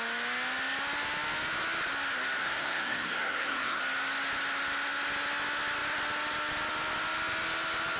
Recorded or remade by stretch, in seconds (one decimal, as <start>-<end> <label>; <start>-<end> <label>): 0.0-2.4 recorded; 2.4-3.8 remade; 3.8-8.0 recorded